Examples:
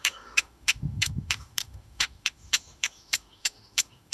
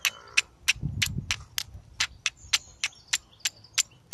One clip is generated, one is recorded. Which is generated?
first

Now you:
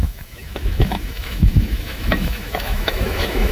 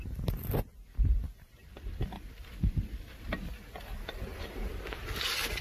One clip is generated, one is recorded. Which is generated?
first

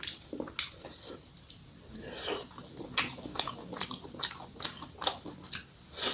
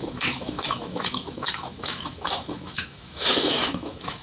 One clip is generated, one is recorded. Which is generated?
second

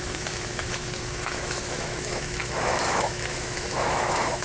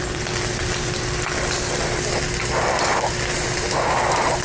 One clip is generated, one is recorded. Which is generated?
first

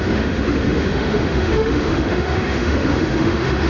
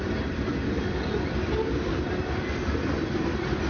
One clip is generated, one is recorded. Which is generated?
first